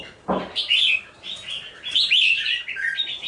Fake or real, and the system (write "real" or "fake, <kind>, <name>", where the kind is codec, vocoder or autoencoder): fake, vocoder, BigVGAN v2